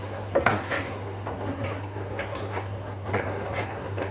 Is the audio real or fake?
fake